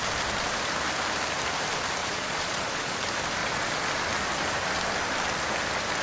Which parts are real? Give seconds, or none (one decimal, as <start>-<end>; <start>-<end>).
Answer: 0.0-2.0; 3.0-3.4; 3.9-6.0

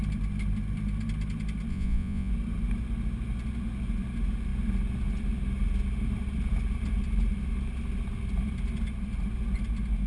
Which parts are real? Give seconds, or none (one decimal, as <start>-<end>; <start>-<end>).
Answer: 0.0-1.7; 2.3-10.1

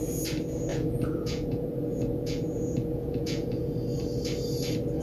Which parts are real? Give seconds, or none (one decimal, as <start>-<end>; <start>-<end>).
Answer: 0.0-0.7; 3.7-5.0

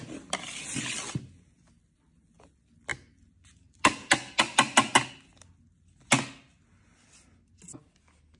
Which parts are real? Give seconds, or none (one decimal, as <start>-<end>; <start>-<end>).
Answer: 0.0-8.4

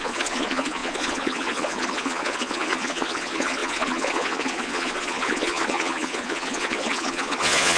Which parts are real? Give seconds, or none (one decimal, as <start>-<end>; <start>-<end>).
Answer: none

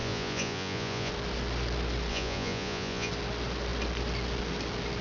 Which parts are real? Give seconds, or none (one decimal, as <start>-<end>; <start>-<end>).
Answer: 1.1-2.1; 3.1-5.0

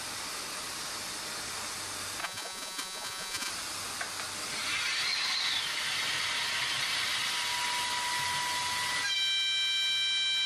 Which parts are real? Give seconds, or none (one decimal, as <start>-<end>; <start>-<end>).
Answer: 0.0-2.2; 3.5-10.5